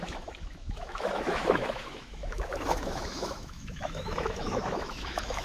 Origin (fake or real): fake